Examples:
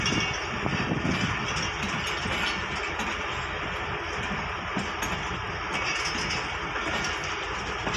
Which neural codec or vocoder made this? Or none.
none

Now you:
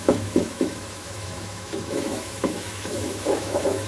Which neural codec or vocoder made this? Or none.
autoencoder, DAC-VAE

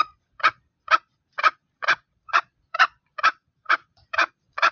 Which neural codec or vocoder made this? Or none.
vocoder, Vocos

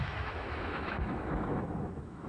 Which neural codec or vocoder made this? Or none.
autoencoder, DAC-VAE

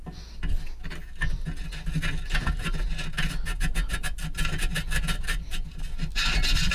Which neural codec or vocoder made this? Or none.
none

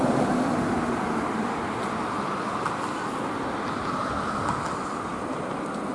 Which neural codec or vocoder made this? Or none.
none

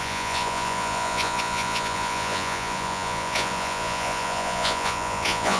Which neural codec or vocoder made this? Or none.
vocoder, Vocos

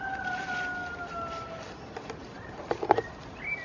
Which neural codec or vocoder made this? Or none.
none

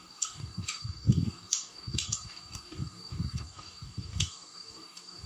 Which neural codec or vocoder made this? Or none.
codec, DAC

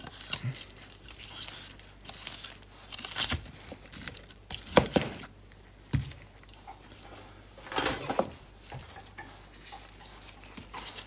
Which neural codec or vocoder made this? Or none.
none